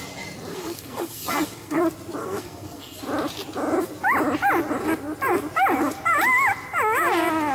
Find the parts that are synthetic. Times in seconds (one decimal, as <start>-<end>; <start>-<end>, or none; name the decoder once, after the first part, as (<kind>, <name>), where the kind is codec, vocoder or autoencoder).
0.5-1.8 (codec, SNAC); 2.2-3.0